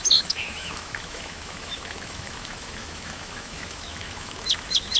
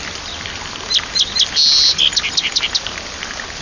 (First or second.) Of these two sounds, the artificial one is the first